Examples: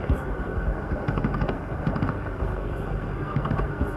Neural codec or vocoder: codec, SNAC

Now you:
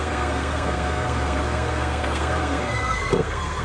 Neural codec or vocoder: codec, SNAC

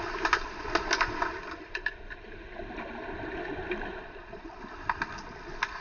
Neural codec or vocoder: none